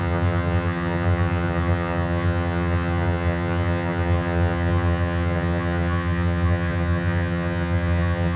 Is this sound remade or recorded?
remade